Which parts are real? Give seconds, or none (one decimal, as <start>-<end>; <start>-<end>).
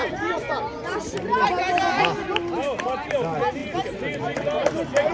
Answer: 3.1-3.6